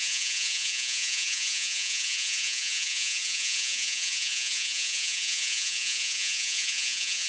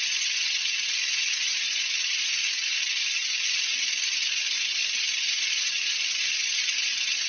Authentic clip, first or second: second